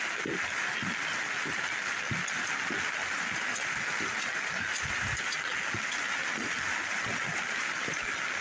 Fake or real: real